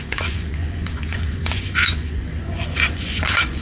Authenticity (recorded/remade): remade